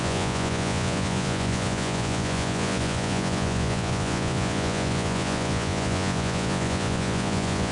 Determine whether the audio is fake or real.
fake